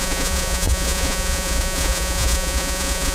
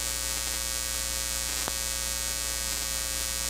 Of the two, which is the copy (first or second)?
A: first